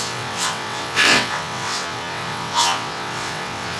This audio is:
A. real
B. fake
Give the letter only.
B